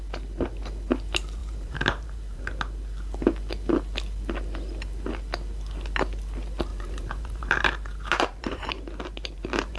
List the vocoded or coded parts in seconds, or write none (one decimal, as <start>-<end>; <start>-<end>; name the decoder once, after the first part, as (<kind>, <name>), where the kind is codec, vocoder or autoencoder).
1.4-2.4 (vocoder, BigVGAN v2); 6.7-9.8